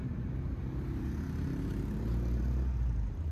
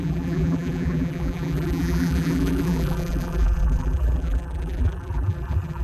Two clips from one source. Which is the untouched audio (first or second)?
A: first